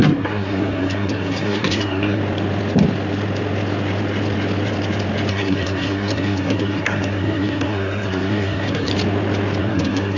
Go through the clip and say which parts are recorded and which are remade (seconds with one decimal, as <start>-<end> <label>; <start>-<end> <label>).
0.0-2.2 remade; 2.2-5.3 recorded; 5.3-8.9 remade; 8.9-9.6 recorded; 9.6-10.2 remade